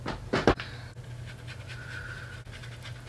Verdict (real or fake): real